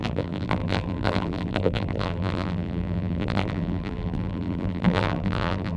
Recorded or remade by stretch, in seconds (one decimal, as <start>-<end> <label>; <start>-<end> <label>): 0.0-5.8 remade